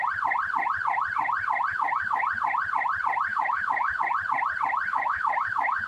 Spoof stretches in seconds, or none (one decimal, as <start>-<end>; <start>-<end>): 1.7-2.2; 3.3-4.0; 4.9-5.9